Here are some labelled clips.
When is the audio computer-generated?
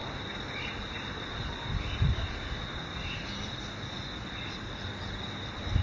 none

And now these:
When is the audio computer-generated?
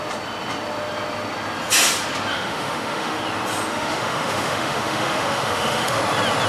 2.3-3.2 (autoencoder, DAC-VAE); 3.7-6.0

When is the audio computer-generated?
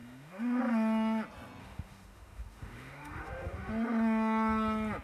0.0-0.6 (autoencoder, DAC-VAE); 1.6-3.7